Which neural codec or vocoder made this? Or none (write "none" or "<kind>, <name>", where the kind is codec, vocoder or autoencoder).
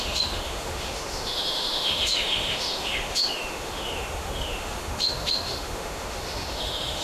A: autoencoder, DAC-VAE